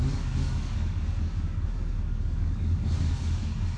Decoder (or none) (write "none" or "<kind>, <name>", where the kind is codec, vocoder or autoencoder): codec, DAC